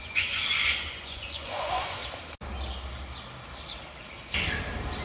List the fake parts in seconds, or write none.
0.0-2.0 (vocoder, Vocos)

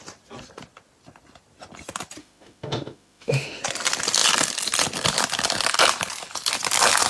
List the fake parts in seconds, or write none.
2.2-3.6 (autoencoder, DAC-VAE)

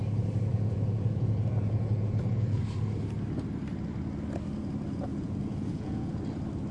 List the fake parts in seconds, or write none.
0.5-2.6 (vocoder, Vocos); 5.1-6.2

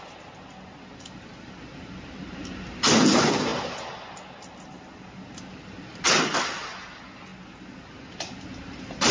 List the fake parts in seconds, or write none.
none